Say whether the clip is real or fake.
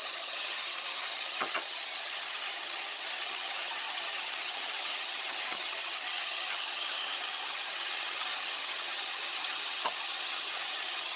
fake